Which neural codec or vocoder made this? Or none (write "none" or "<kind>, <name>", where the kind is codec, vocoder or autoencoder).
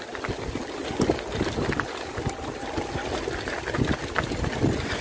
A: none